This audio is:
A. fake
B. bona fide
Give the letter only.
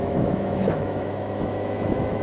A